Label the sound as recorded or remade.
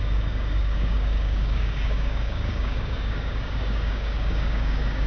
remade